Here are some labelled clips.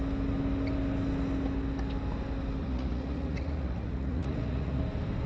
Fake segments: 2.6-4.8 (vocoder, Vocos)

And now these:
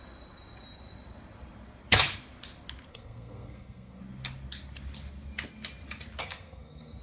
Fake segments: 2.9-4.0 (codec, SNAC); 6.2-7.0